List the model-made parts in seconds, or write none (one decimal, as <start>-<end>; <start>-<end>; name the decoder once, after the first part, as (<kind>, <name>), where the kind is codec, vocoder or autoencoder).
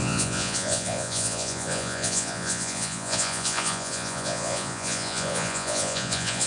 0.0-6.5 (vocoder, Vocos)